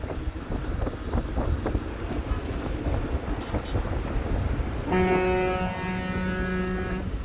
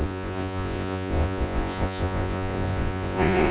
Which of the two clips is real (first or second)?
first